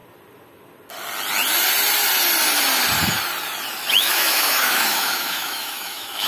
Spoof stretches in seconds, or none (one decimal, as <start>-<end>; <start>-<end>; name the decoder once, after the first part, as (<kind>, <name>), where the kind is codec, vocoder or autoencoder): 3.8-6.3 (autoencoder, DAC-VAE)